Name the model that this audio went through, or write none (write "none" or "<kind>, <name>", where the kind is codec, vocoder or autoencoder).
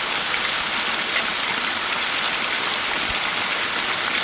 none